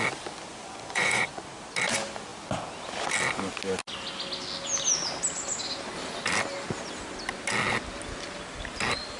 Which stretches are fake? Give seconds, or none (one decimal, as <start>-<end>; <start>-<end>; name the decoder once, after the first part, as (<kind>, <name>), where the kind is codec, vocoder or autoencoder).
0.5-1.4 (vocoder, Vocos)